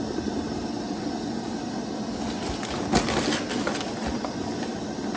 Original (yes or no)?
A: yes